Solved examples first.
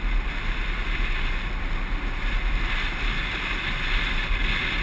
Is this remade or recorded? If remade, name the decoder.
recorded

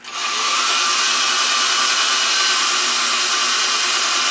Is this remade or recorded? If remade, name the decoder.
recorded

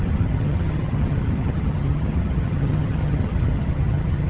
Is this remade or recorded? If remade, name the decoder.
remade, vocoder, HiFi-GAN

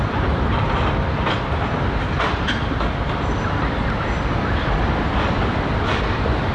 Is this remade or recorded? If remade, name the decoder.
remade, vocoder, BigVGAN v2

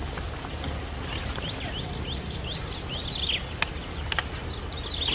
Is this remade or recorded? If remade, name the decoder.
recorded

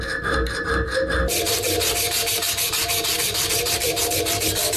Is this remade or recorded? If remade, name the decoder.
remade, vocoder, BigVGAN v2